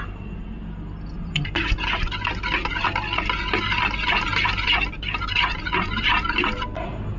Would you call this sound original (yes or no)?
yes